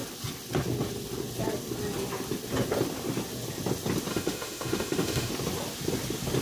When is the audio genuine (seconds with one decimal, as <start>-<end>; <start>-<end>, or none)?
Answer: 0.0-4.1; 5.3-6.4